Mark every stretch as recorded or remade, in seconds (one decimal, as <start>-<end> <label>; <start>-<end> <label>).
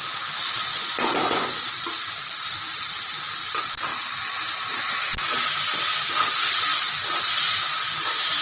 0.0-0.7 recorded; 0.7-1.5 remade; 1.5-8.4 recorded